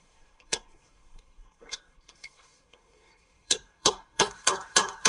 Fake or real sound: fake